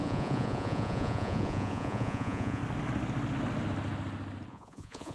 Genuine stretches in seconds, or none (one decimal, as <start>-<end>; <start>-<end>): 2.6-4.5